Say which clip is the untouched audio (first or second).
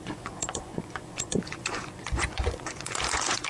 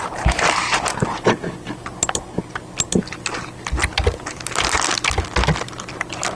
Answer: second